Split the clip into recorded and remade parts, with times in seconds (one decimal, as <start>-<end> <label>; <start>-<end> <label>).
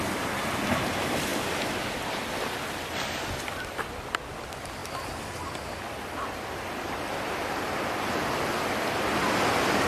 0.0-9.9 recorded